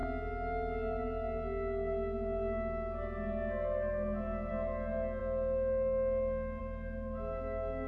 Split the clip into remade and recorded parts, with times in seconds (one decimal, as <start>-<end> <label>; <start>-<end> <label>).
0.0-7.9 recorded